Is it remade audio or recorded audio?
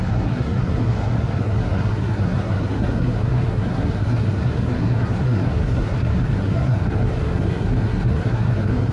remade